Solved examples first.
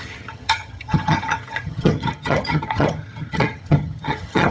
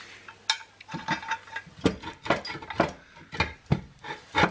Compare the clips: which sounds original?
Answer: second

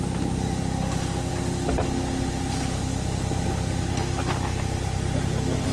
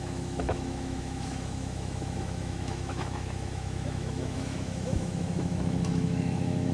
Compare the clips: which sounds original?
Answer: first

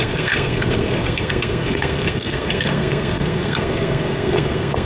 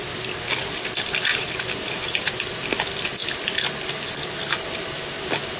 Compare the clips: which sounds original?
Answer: second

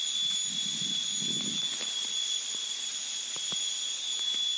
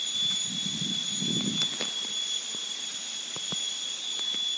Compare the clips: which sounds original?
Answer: first